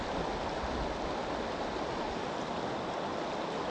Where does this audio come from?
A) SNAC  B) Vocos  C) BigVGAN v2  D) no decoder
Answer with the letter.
D